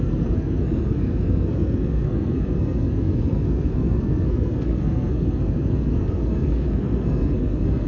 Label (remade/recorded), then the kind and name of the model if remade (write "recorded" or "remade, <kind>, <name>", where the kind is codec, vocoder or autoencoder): remade, codec, SNAC